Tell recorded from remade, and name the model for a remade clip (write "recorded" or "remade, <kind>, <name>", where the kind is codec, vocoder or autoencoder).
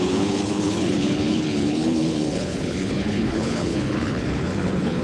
remade, codec, HILCodec